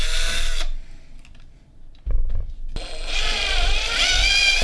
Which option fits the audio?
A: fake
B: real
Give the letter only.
B